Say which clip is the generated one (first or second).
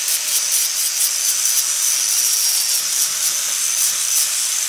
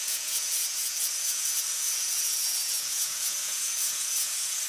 second